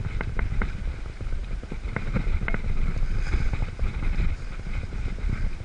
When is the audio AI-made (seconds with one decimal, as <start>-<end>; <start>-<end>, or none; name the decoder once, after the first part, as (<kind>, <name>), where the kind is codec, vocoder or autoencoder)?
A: none